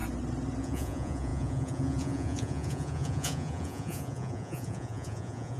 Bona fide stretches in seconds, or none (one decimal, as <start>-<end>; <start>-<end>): 0.0-0.6